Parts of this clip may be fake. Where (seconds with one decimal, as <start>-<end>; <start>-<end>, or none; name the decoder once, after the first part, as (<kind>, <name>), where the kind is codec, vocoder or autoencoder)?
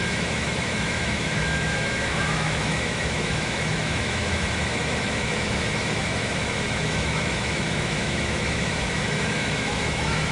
0.0-10.3 (autoencoder, DAC-VAE)